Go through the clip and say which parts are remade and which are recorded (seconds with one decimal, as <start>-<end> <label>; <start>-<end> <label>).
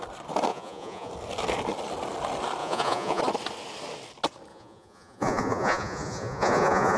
0.0-0.5 recorded; 0.5-1.1 remade; 1.1-2.6 recorded; 2.6-3.2 remade; 3.2-4.5 recorded; 4.5-7.0 remade